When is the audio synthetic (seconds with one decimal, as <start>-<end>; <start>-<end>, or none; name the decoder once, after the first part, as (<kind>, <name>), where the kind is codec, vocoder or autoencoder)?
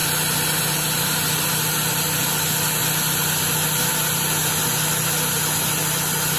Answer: none